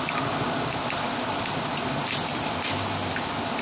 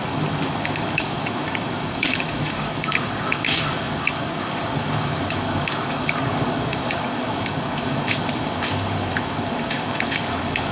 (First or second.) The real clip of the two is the first